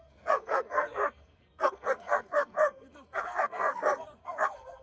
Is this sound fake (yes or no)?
yes